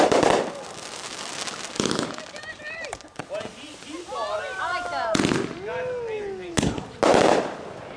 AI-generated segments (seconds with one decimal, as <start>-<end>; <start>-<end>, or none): none

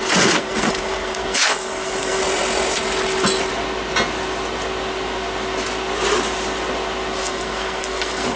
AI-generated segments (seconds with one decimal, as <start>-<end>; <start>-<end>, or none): 0.0-2.2; 7.2-8.4

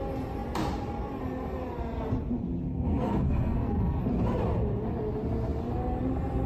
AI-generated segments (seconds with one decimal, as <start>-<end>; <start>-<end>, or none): 2.7-4.0

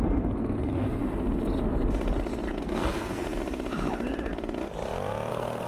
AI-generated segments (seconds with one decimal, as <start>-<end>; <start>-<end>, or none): 0.0-1.0; 2.6-3.2; 5.3-5.7

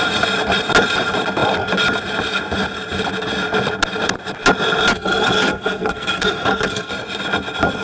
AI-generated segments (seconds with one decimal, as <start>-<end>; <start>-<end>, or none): 4.9-6.9

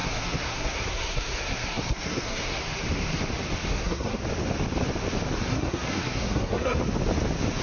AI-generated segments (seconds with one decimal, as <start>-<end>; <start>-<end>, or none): 0.0-2.6; 3.7-4.2; 5.5-6.8

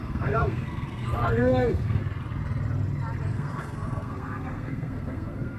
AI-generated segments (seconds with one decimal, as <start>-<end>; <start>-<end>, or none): 0.0-2.0; 3.3-5.6